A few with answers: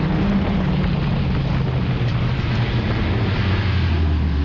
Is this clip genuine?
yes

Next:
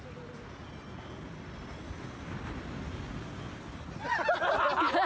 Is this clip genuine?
yes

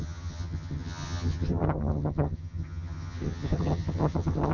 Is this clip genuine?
no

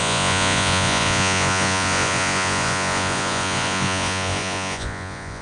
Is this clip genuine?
no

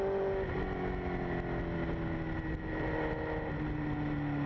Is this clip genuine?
yes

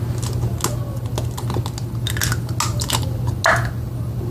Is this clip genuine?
yes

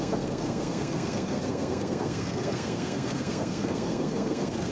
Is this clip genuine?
no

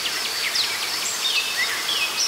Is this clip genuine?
yes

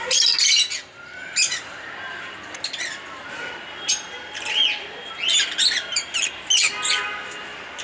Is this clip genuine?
yes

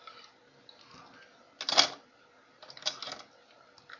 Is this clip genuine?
yes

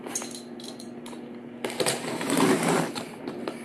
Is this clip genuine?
yes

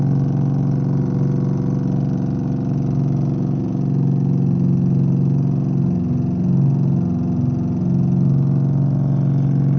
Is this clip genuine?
yes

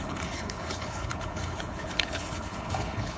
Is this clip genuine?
no